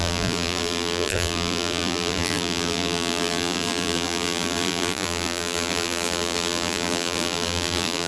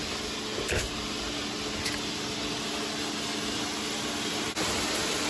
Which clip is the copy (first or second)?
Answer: first